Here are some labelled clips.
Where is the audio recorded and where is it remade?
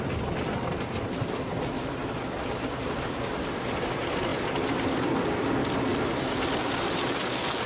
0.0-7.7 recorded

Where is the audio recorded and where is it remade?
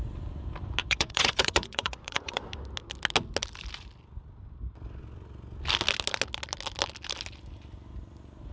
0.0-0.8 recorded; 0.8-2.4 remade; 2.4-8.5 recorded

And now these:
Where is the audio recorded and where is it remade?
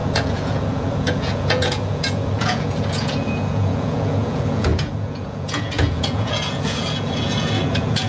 0.0-8.1 remade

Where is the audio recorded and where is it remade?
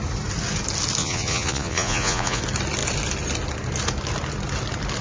0.0-1.0 recorded; 1.0-2.4 remade; 2.4-5.0 recorded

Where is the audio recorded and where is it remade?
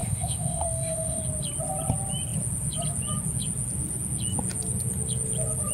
0.0-1.2 remade; 1.2-5.7 recorded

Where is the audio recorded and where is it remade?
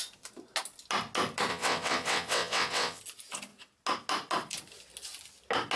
0.0-1.5 recorded; 1.5-3.0 remade; 3.0-5.8 recorded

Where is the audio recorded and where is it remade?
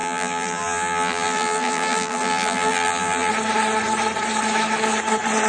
0.0-3.3 remade; 3.3-5.5 recorded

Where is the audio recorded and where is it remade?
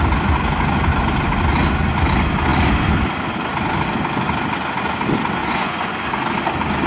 0.0-5.4 recorded; 5.4-6.1 remade; 6.1-6.9 recorded